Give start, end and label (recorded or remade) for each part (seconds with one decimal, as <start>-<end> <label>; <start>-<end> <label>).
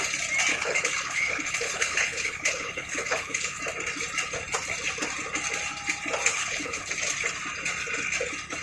0.0-0.5 recorded; 0.5-3.6 remade; 3.6-6.3 recorded; 6.3-6.9 remade; 6.9-8.6 recorded